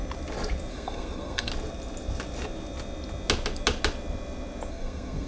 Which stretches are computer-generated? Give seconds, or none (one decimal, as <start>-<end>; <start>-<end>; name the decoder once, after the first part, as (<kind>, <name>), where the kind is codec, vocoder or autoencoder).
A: 0.7-1.5 (codec, SNAC); 4.7-5.3